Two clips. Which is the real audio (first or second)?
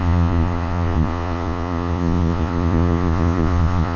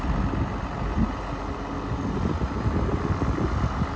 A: second